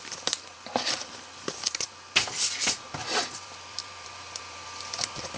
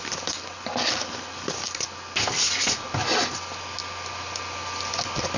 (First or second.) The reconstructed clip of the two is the first